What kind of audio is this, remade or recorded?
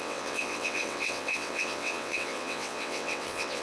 remade